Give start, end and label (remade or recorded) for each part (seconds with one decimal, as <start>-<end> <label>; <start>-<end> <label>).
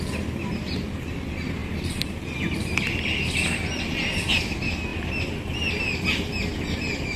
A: 0.0-7.2 recorded